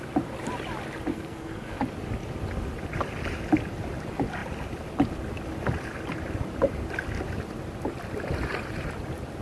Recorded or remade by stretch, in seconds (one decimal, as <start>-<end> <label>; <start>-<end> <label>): 0.0-1.1 recorded; 1.1-1.8 remade; 1.8-9.4 recorded